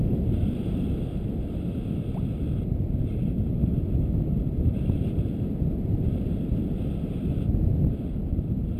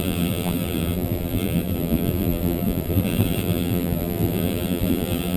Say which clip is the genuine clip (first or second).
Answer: first